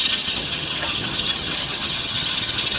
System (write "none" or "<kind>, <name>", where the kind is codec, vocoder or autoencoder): vocoder, HiFi-GAN